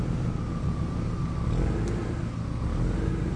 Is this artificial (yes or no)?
no